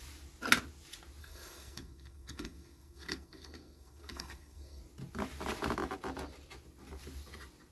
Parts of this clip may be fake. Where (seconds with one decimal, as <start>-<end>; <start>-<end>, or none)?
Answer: 1.2-4.8